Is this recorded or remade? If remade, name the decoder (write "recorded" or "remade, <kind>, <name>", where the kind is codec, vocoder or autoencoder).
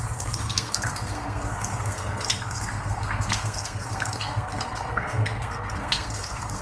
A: remade, codec, SNAC